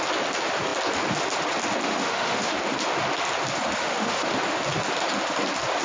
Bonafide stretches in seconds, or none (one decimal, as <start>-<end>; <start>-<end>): 0.0-1.9; 2.5-3.8; 4.4-5.8